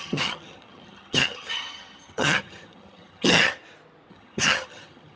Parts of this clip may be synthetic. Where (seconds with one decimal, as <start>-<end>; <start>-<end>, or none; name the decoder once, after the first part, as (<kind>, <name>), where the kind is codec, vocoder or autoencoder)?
0.0-3.5 (vocoder, HiFi-GAN); 4.1-5.2